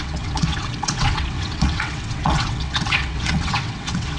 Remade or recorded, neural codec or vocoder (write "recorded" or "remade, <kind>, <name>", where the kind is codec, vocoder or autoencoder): remade, vocoder, WaveNeXt